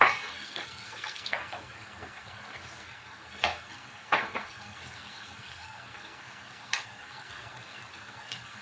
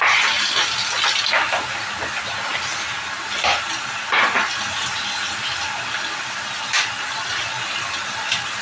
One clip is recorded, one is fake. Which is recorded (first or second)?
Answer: second